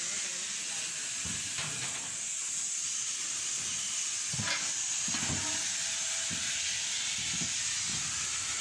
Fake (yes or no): no